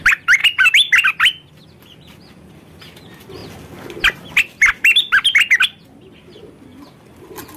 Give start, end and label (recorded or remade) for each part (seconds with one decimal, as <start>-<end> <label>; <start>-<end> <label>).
0.0-7.6 recorded